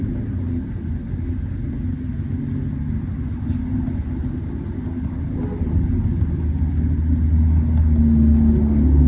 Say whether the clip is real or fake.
real